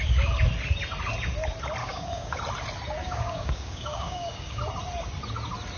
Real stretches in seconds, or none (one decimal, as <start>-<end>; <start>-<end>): 0.0-1.8; 2.4-3.0; 4.6-5.8